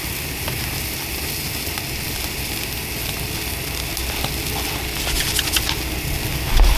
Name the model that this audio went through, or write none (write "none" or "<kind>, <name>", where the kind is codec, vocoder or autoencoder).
none